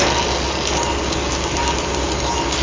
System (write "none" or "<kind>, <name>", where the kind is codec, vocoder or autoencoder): none